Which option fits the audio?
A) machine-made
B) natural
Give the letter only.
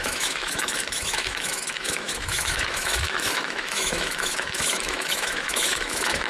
A